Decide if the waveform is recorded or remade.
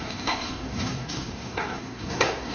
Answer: remade